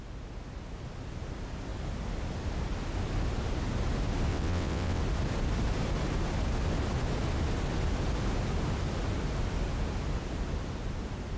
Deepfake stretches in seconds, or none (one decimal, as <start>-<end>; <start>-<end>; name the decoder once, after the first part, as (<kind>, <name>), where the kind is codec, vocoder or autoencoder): 4.3-5.0 (vocoder, WaveNeXt)